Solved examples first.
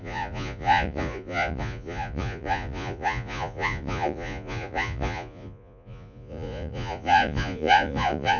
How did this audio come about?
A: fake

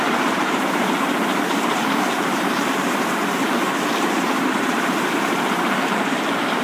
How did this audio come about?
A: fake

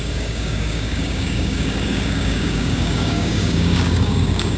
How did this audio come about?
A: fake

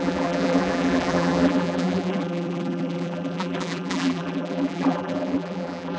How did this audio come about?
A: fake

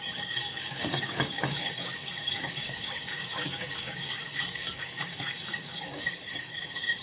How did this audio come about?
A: fake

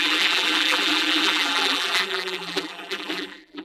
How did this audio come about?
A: fake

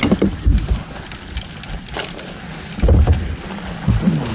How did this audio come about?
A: real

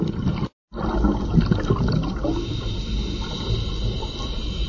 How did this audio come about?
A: real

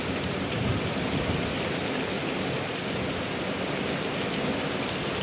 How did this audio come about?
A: real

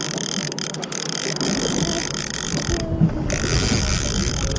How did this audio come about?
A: real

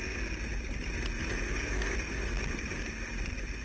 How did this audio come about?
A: real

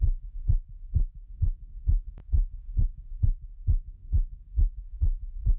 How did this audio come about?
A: fake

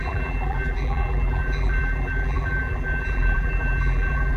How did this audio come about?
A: fake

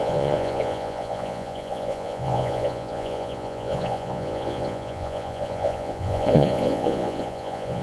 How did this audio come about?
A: fake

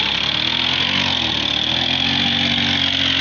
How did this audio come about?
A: real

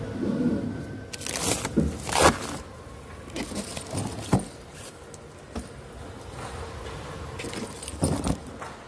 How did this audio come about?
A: real